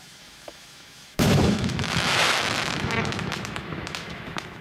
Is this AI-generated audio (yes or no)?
yes